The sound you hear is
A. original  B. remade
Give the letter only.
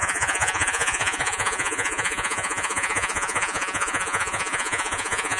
B